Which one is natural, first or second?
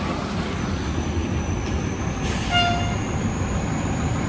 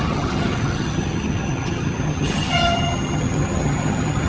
first